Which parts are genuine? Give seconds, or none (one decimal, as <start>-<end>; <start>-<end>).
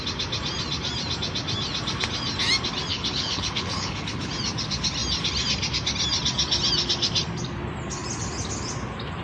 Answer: 0.0-2.9; 4.3-9.2